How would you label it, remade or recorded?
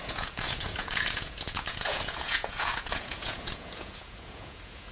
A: remade